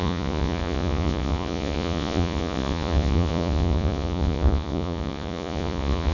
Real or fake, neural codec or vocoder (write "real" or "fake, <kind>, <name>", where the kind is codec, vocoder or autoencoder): fake, vocoder, Vocos